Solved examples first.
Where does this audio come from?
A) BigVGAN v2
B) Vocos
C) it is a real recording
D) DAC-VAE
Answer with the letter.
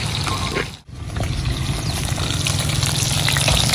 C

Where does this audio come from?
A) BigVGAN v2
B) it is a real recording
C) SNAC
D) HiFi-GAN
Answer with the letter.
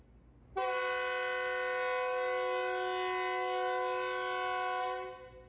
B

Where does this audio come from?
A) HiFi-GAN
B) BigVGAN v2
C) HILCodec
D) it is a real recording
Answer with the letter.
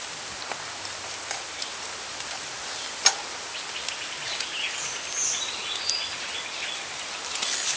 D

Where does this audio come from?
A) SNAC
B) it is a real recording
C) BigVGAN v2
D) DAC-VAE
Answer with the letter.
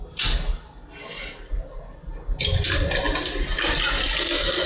B